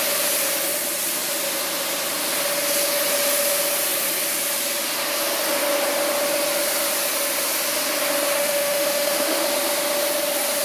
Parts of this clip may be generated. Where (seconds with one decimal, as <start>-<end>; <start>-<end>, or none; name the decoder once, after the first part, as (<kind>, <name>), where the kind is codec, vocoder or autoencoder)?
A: 8.4-9.4 (autoencoder, DAC-VAE)